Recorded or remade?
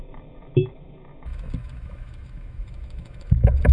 remade